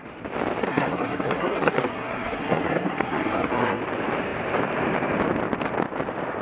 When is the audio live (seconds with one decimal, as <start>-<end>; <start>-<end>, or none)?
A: 0.0-0.6; 3.8-6.4